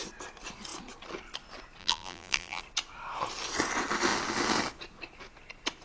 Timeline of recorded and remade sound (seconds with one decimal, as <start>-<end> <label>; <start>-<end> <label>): 0.0-1.8 recorded; 1.8-2.6 remade; 2.6-5.8 recorded